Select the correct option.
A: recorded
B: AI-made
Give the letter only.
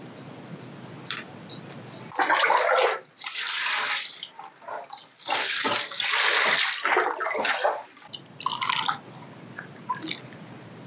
A